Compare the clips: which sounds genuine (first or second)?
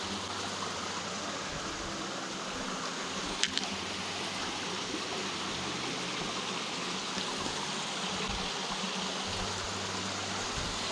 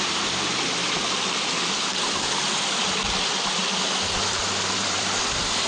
first